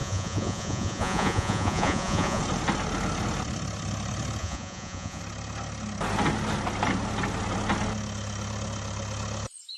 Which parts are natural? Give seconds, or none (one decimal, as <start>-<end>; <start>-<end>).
2.4-4.4; 5.2-9.8